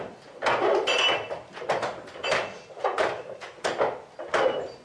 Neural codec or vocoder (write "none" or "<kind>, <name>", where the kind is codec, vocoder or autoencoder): none